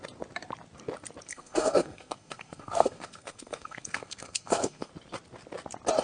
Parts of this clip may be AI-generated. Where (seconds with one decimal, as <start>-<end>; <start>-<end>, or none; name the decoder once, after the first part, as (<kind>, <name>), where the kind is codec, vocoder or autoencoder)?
1.3-4.9 (codec, SNAC)